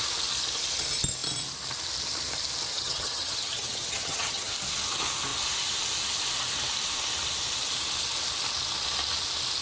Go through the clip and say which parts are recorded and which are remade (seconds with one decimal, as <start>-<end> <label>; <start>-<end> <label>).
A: 0.0-2.7 recorded; 2.7-4.5 remade; 4.5-9.6 recorded